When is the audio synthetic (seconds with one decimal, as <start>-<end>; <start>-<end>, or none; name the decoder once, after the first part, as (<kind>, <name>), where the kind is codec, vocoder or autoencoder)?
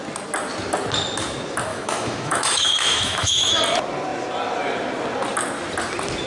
1.7-3.6 (autoencoder, DAC-VAE)